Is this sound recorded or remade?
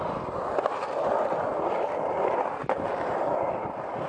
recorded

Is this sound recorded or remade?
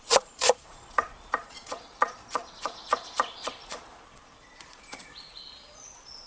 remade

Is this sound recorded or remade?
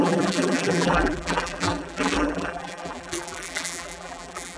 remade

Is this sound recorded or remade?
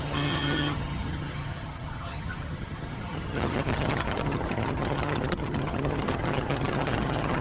remade